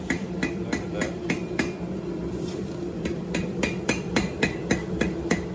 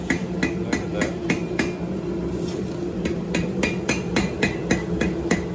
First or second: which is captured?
second